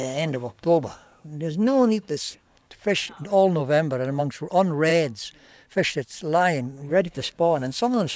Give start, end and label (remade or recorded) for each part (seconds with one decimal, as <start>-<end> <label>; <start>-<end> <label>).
0.0-2.7 remade; 2.7-6.9 recorded; 6.9-8.2 remade